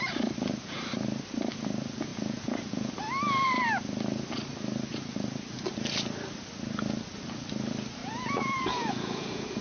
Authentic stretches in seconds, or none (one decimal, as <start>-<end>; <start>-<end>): 0.0-2.1; 2.9-8.0